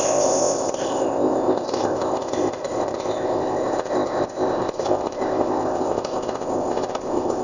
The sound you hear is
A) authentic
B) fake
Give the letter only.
B